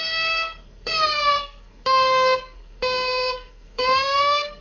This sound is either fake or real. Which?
fake